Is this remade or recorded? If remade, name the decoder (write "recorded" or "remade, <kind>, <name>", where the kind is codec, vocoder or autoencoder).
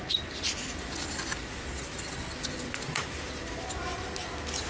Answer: recorded